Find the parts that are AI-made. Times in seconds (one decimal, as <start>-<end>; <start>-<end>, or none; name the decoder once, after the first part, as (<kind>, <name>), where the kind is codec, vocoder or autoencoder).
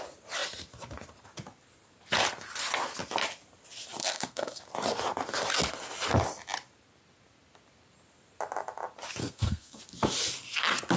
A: 4.0-4.6 (codec, SNAC); 9.2-9.8